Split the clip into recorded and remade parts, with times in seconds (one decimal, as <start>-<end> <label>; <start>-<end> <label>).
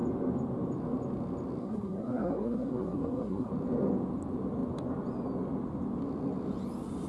0.0-1.6 recorded; 1.6-3.5 remade; 3.5-7.1 recorded